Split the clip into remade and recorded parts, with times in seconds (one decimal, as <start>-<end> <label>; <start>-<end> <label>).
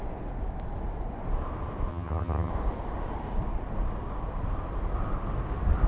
0.0-1.9 recorded; 1.9-2.5 remade; 2.5-5.9 recorded